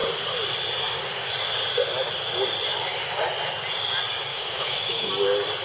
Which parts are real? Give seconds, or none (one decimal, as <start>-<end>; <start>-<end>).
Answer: 0.0-4.3; 5.1-5.6